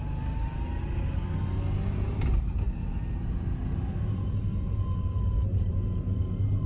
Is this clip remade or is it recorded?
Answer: recorded